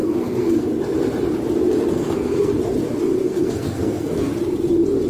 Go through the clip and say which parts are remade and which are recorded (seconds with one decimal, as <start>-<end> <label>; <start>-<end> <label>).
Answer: 0.0-0.7 remade; 0.7-1.9 recorded; 1.9-2.5 remade; 2.5-3.2 recorded; 3.2-4.3 remade; 4.3-5.1 recorded